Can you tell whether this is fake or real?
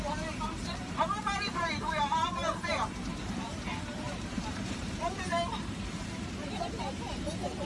fake